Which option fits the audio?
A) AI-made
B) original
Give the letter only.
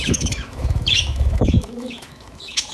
A